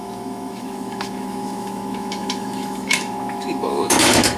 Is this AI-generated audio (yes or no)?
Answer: yes